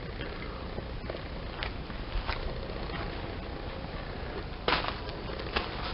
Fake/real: real